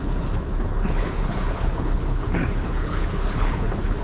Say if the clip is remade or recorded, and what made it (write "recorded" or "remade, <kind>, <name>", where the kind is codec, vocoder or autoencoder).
remade, codec, HILCodec